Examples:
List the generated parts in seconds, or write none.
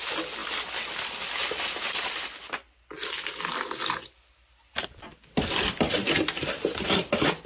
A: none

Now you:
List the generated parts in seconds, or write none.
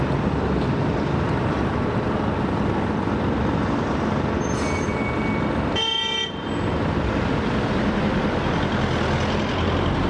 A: none